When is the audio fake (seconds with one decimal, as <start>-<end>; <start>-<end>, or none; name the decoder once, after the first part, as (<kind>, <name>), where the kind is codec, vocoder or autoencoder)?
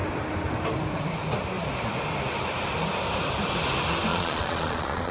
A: 4.1-5.1 (vocoder, Vocos)